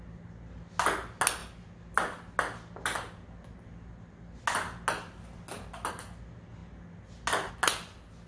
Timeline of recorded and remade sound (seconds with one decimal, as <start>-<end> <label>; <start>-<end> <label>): 0.0-8.3 recorded

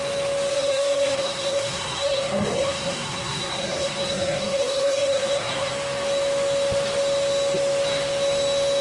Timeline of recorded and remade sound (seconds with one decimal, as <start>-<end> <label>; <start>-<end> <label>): 0.0-0.5 recorded; 0.5-5.7 remade; 5.7-8.8 recorded

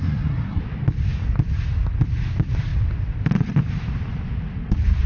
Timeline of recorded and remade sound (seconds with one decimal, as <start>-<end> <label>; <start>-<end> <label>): 0.0-0.6 remade; 0.6-5.1 recorded

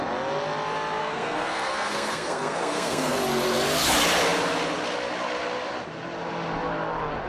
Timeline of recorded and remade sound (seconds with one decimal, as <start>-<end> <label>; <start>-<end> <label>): 0.0-1.0 recorded; 1.0-3.2 remade; 3.2-7.3 recorded